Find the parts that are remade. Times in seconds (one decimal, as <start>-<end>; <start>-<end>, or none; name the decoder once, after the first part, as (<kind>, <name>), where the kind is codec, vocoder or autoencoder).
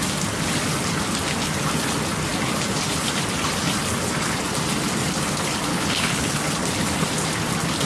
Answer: 5.7-6.3 (codec, HILCodec)